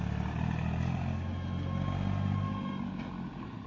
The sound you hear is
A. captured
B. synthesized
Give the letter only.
A